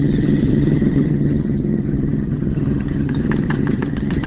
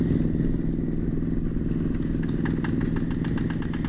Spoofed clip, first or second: first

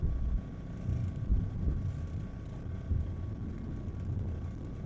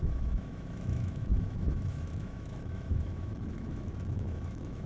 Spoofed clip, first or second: second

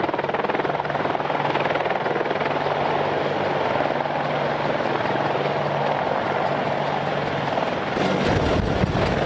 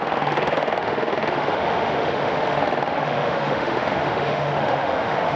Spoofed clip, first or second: second